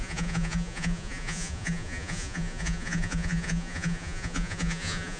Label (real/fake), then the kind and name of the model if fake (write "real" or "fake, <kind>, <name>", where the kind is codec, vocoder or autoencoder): fake, vocoder, Vocos